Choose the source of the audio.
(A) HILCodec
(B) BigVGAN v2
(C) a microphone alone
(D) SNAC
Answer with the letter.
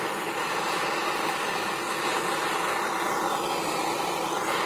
C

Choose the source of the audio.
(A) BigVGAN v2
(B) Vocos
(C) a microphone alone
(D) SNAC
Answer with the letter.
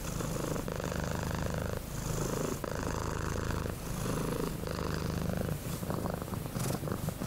C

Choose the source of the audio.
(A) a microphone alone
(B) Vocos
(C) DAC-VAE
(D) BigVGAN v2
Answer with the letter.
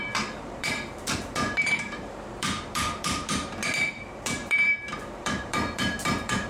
D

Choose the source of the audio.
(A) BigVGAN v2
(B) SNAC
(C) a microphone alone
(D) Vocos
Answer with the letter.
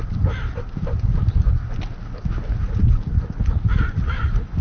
C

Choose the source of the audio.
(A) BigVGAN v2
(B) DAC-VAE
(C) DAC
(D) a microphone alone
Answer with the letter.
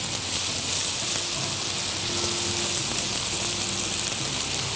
D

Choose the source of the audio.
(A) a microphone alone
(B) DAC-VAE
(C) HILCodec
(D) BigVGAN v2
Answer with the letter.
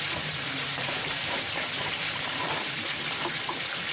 D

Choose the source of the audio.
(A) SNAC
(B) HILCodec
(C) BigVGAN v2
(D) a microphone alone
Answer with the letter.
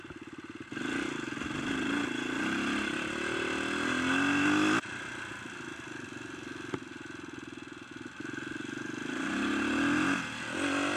D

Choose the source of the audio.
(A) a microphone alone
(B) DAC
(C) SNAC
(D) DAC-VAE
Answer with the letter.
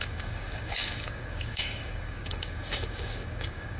B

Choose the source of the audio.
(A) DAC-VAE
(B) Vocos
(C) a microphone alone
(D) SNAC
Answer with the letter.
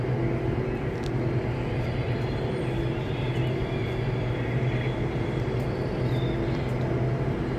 C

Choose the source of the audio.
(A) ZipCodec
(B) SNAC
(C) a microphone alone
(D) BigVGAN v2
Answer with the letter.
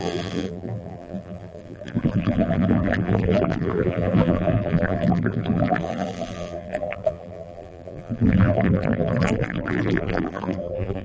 D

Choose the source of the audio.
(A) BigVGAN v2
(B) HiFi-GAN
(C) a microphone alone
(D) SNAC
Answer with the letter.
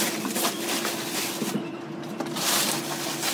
C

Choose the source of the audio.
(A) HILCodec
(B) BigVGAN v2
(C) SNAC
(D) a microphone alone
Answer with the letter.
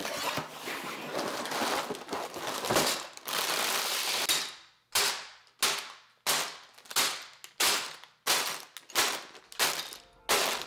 D